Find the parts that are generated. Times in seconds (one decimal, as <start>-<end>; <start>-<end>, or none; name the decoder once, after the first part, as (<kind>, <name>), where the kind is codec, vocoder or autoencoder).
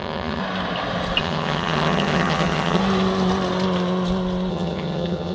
0.0-0.4 (vocoder, HiFi-GAN); 1.2-2.8; 4.5-5.3